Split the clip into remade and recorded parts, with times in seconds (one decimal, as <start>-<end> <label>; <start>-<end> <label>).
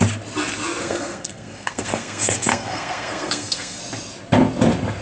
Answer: 0.0-0.8 recorded; 0.8-3.8 remade; 3.8-5.0 recorded